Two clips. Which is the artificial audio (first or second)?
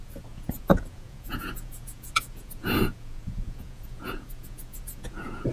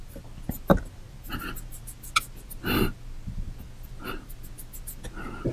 first